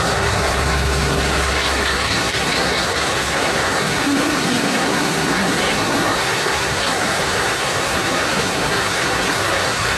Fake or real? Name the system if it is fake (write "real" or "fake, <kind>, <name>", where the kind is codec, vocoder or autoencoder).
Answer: fake, codec, SNAC